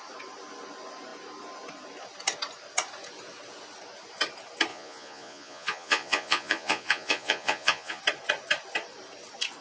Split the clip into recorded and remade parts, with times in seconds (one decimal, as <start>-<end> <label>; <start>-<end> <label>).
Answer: 0.0-4.7 recorded; 4.7-8.0 remade; 8.0-9.6 recorded